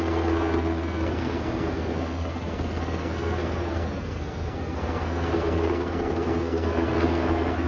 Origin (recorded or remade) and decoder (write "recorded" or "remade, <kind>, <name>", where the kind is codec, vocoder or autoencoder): remade, codec, SNAC